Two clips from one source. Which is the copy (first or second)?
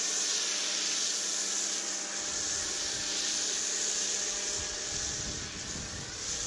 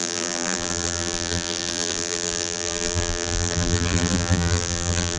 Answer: second